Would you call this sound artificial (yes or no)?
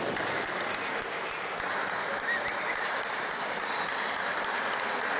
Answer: no